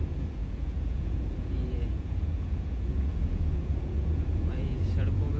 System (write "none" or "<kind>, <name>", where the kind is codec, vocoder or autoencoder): vocoder, Vocos